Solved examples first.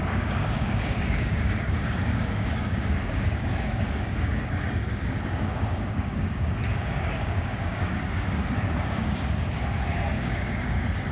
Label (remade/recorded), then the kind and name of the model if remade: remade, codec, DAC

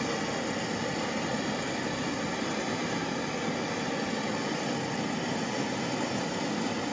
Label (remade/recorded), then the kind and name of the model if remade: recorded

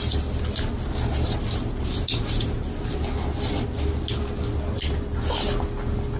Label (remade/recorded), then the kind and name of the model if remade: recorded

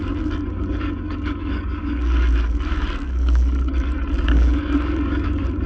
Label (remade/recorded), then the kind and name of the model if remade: remade, codec, DAC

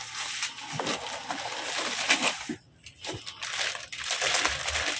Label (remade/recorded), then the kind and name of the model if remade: recorded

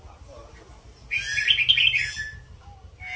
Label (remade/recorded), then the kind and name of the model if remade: recorded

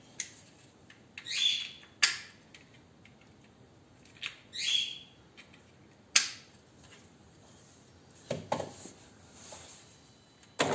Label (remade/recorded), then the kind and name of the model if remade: recorded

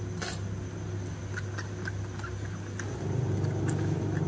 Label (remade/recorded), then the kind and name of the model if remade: recorded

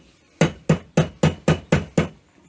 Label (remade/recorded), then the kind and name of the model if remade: recorded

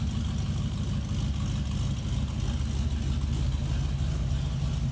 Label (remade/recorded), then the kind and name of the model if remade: recorded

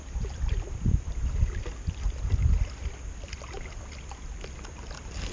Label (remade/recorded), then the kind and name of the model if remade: recorded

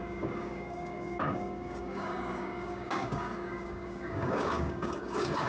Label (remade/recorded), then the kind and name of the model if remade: remade, codec, DAC